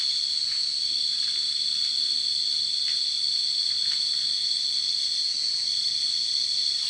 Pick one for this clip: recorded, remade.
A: recorded